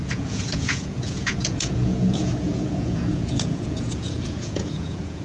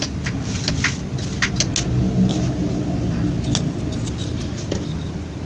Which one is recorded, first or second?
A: second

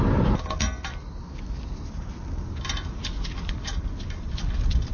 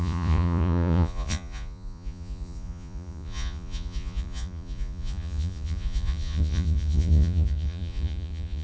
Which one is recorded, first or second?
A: first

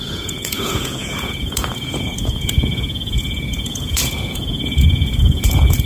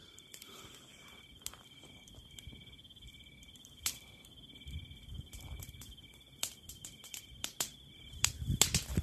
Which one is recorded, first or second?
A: second